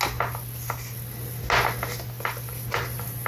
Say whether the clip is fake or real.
real